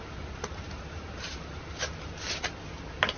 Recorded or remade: recorded